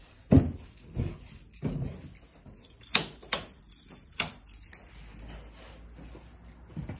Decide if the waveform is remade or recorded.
recorded